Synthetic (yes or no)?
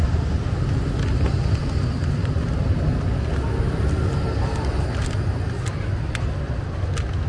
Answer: no